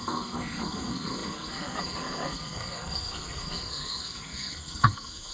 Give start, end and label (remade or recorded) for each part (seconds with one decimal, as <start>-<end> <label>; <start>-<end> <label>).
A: 0.0-5.3 remade

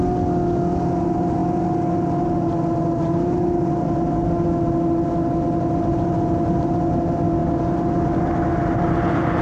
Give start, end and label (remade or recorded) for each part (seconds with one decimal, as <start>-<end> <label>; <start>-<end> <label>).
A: 0.0-9.4 recorded

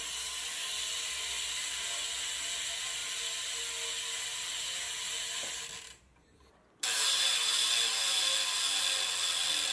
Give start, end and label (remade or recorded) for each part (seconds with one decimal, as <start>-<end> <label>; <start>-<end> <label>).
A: 0.0-9.7 recorded